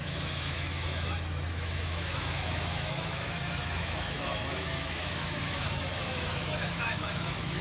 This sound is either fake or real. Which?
fake